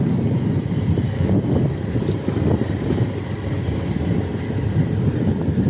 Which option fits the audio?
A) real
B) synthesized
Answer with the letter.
A